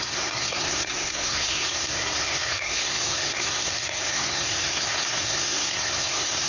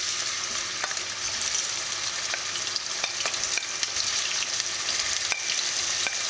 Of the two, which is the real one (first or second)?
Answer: second